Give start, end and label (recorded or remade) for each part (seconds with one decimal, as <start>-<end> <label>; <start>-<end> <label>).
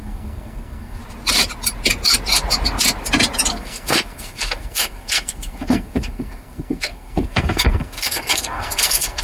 0.0-1.0 remade; 1.0-3.5 recorded; 3.5-9.2 remade